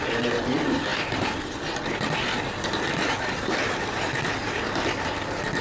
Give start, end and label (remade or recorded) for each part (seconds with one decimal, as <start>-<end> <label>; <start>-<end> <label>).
0.0-5.6 recorded